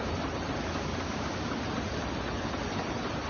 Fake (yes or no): no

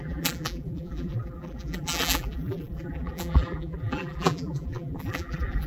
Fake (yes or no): yes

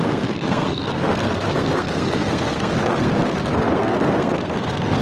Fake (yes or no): yes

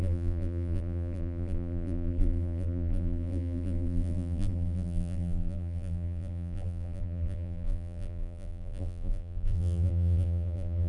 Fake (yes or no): yes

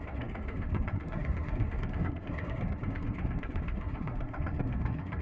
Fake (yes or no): yes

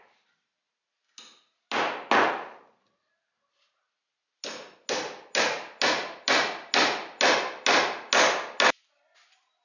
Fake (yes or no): no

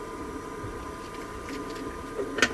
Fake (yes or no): no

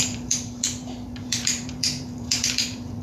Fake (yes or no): yes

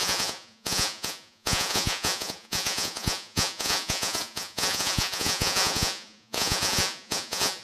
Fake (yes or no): yes